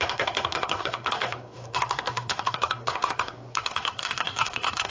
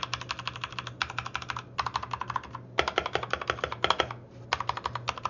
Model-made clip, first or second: first